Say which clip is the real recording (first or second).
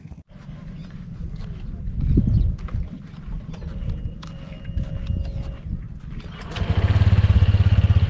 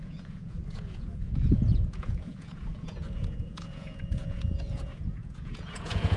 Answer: first